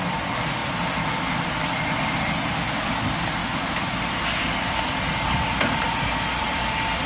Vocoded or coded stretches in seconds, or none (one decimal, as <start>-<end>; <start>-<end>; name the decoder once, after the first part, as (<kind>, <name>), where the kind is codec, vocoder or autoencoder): 0.0-0.6 (vocoder, BigVGAN v2); 1.8-7.1